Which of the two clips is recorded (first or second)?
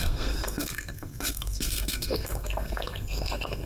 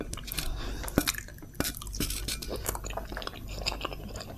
second